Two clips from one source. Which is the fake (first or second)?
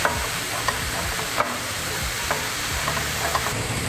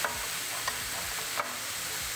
first